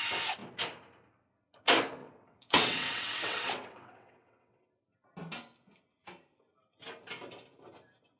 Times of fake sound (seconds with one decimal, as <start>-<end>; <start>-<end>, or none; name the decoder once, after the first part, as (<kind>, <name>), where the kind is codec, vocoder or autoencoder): 2.0-4.6 (vocoder, WaveNeXt)